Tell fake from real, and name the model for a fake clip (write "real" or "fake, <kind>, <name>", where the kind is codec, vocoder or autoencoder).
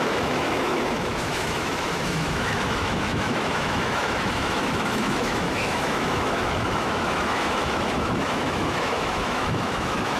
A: fake, autoencoder, DAC-VAE